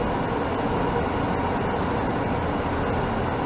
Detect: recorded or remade recorded